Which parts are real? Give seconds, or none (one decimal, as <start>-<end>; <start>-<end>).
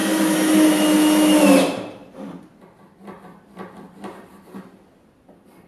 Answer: 0.0-5.7